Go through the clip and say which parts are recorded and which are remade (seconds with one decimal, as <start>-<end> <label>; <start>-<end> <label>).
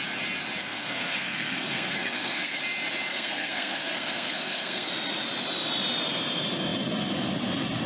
0.0-0.6 recorded; 0.6-2.6 remade; 2.6-3.1 recorded; 3.1-4.9 remade; 4.9-7.9 recorded